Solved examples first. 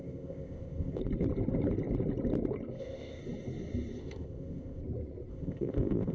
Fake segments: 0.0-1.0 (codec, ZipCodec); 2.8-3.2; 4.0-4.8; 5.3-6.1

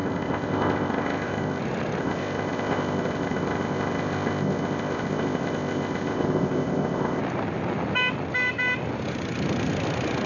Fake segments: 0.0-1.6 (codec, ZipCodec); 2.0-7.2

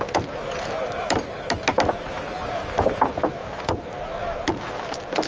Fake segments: none